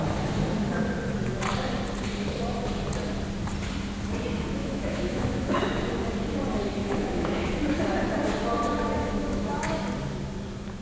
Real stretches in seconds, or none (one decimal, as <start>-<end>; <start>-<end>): 0.0-4.6; 5.6-6.8; 7.5-9.0; 9.8-10.8